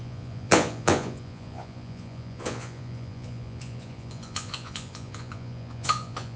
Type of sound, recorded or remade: remade